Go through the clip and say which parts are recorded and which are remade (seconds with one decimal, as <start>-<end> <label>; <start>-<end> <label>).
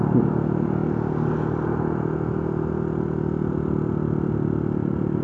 0.0-5.2 recorded